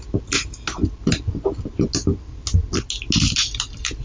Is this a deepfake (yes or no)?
no